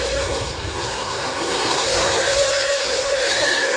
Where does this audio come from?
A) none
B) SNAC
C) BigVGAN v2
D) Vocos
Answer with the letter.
B